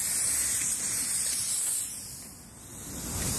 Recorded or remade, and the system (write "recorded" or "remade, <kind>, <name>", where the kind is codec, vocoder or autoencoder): recorded